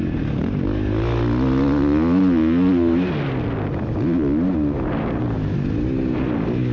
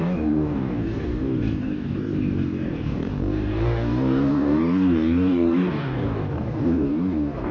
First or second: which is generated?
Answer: second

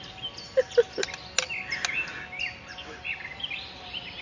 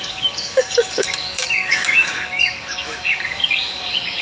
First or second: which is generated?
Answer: second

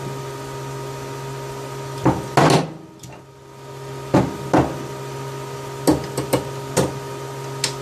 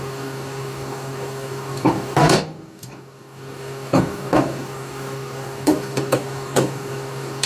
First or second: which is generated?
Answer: second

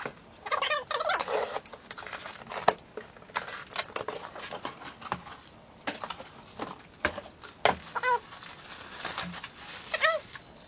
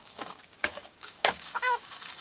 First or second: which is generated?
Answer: second